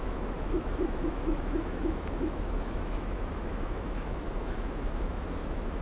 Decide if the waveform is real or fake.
fake